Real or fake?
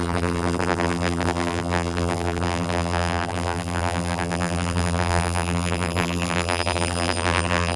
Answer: fake